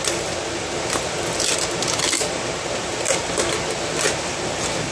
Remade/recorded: recorded